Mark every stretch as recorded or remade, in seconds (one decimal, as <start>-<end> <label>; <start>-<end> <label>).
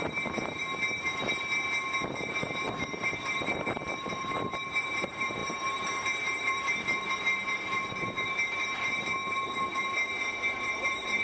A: 0.0-0.6 remade; 0.6-2.3 recorded; 2.3-9.2 remade; 9.2-10.5 recorded; 10.5-11.2 remade